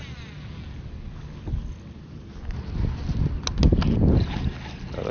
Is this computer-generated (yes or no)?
no